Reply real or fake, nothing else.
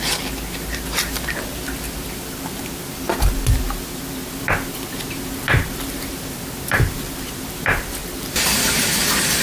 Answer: real